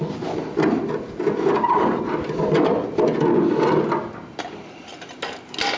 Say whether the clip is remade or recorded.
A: recorded